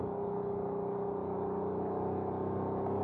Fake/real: fake